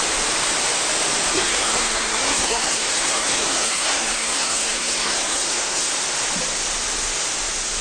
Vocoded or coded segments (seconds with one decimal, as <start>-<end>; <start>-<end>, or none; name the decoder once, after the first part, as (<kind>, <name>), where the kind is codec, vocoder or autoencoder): 1.3-5.9 (codec, SNAC)